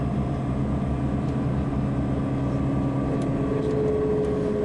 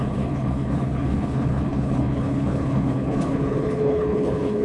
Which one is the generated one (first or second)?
second